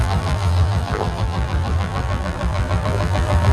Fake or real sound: fake